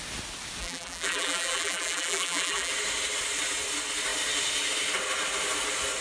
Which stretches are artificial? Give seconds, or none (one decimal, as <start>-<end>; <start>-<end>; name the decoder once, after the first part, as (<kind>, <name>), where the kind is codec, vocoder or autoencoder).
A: 0.6-2.7 (vocoder, BigVGAN v2)